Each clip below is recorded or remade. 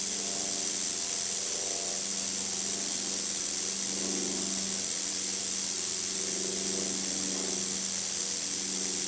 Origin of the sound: recorded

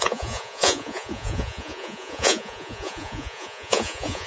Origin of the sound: remade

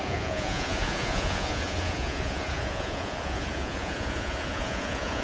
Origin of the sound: remade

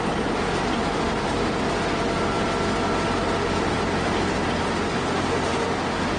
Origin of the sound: recorded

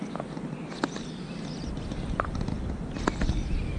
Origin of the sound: recorded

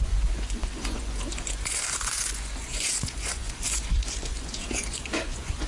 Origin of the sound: remade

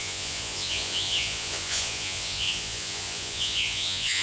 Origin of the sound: remade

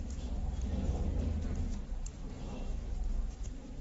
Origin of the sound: recorded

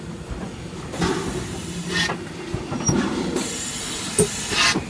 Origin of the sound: recorded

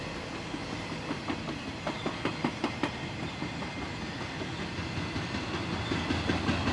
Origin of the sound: recorded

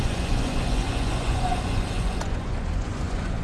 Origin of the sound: remade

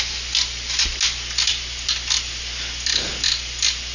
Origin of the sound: recorded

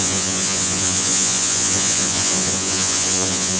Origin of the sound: remade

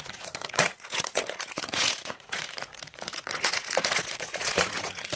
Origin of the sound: remade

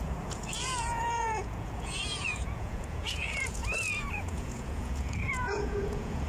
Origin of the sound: remade